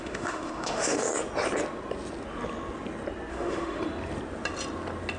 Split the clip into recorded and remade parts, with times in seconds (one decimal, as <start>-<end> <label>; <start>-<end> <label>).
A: 0.0-1.1 remade; 1.1-3.3 recorded; 3.3-3.8 remade; 3.8-5.2 recorded